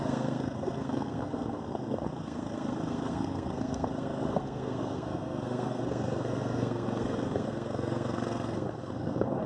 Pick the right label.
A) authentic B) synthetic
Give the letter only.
B